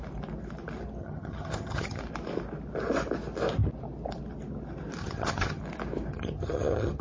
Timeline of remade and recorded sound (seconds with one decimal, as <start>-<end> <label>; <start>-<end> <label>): 0.0-1.0 recorded; 1.0-2.0 remade; 2.0-5.0 recorded; 5.0-5.6 remade; 5.6-6.1 recorded; 6.1-7.0 remade